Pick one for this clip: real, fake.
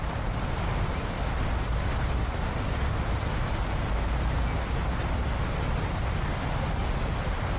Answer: real